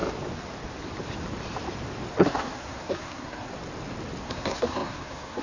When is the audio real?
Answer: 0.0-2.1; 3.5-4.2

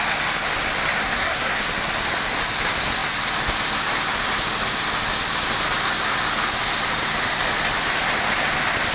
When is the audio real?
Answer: 0.0-1.0; 1.6-8.9

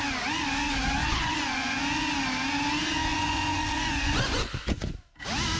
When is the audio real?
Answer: 0.0-1.0; 1.8-3.1; 5.0-5.6

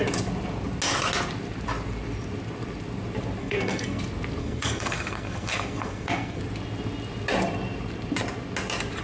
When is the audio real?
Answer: 0.0-3.4; 4.0-4.4; 6.4-9.0

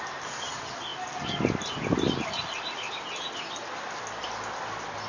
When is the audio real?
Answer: 0.0-5.1

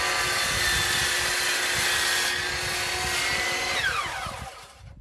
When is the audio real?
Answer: 0.0-3.3; 4.5-5.0

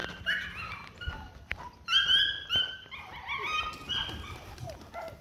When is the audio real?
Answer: 0.0-5.2

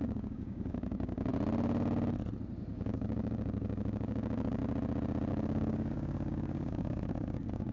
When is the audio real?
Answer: 1.3-2.7; 4.6-5.3